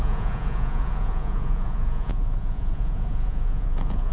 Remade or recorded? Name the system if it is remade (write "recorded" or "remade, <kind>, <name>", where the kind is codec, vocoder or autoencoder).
remade, vocoder, Vocos